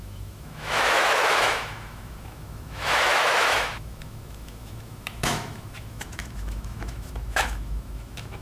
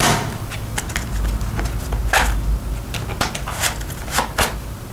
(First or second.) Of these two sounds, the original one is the second